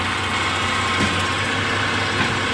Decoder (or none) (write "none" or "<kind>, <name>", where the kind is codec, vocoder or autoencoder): none